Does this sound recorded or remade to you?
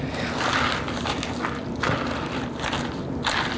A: recorded